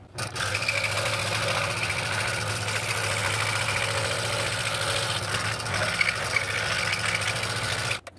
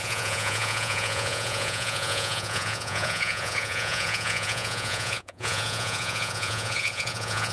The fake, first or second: second